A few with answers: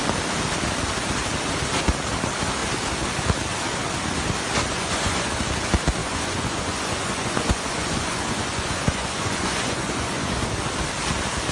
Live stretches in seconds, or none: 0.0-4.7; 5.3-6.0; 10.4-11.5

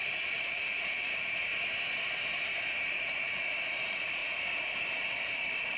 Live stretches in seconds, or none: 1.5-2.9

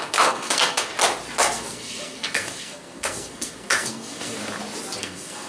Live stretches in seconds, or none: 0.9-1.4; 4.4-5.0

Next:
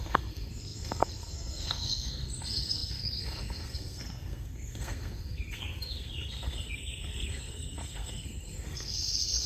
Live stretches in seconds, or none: none

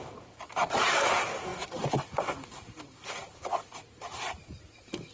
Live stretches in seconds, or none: 0.0-5.1

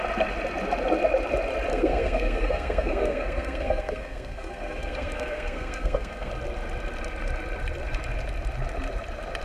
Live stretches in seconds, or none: 0.0-1.7; 6.3-9.4

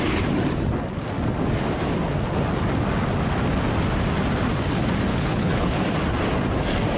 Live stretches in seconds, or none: 0.0-5.1; 5.8-7.0

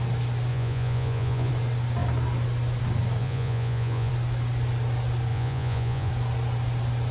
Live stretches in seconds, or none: 0.0-0.5; 1.5-3.2; 4.1-5.3; 6.1-7.1